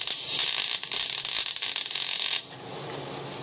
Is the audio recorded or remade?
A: recorded